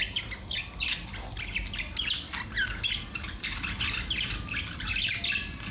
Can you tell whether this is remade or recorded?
recorded